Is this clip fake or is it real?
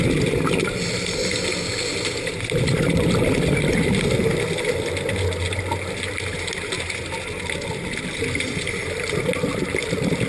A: real